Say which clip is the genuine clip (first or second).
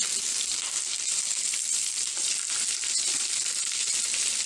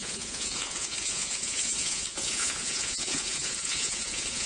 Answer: first